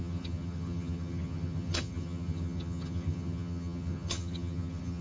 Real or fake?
fake